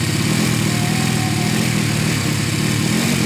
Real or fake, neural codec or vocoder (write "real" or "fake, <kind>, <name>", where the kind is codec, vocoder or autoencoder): real